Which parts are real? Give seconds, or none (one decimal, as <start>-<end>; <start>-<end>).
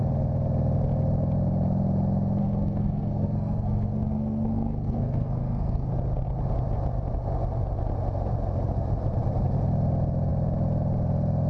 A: 0.0-2.4; 5.9-11.5